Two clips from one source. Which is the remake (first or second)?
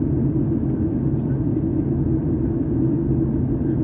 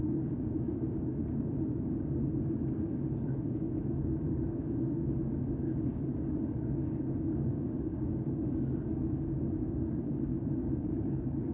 second